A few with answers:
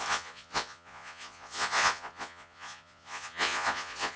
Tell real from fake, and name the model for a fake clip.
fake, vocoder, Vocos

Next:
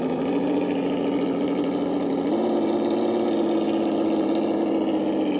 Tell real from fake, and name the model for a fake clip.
real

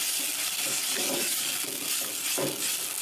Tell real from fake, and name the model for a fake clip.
real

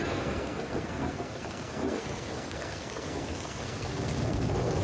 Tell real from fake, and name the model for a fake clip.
fake, codec, SNAC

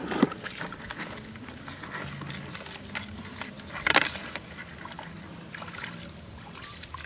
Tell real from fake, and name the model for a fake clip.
real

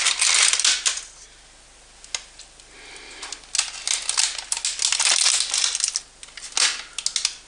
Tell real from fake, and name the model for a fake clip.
real